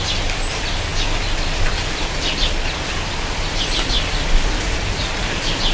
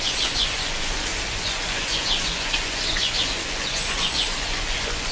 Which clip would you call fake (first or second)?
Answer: second